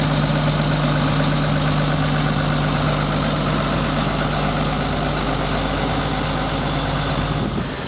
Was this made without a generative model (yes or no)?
yes